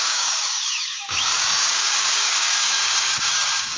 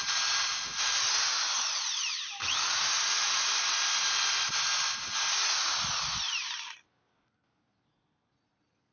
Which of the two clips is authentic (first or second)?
second